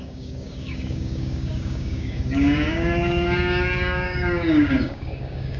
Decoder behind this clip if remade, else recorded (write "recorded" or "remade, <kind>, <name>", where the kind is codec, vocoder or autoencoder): remade, codec, DAC